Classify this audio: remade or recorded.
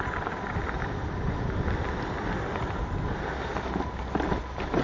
recorded